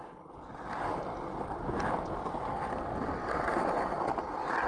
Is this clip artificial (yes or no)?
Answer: no